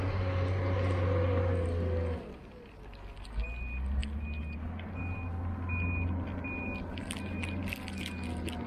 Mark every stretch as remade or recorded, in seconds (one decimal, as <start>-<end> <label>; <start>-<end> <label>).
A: 0.0-8.7 recorded